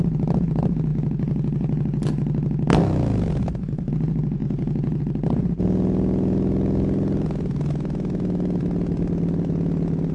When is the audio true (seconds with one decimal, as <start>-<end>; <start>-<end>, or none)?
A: 0.0-4.4; 5.0-10.1